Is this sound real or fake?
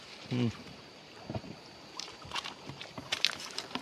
fake